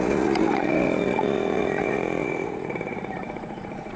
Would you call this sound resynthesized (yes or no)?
yes